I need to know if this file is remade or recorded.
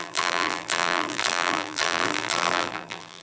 remade